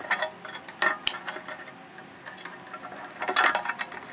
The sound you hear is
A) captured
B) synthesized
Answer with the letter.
A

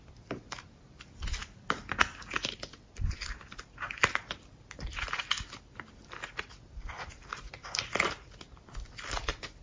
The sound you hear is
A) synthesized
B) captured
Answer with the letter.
B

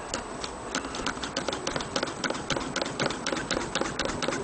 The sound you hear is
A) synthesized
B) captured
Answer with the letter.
B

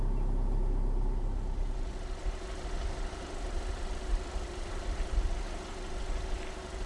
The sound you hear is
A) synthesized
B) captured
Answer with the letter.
B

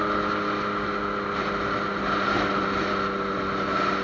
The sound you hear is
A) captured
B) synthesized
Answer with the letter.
A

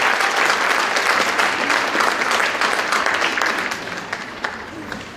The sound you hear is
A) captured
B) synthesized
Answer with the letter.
B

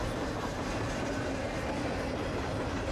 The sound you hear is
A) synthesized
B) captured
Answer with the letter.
A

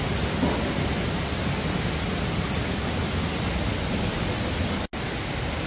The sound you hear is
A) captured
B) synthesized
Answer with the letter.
A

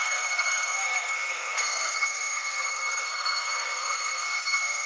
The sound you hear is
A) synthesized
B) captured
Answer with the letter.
A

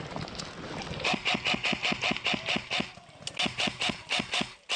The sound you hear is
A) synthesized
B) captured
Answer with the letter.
B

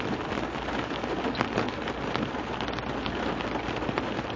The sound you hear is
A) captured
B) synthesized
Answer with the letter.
A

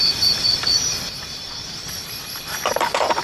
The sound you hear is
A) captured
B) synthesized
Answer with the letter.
B